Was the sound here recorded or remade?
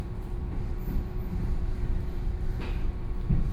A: remade